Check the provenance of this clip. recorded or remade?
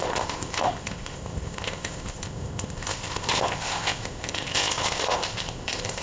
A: remade